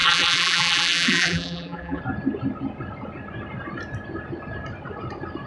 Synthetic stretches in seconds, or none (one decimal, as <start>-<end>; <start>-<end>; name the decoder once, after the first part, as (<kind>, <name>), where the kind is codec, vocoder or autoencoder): 0.0-2.0 (vocoder, BigVGAN v2)